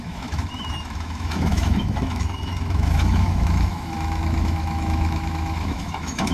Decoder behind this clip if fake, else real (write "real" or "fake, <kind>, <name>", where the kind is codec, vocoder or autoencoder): fake, autoencoder, DAC-VAE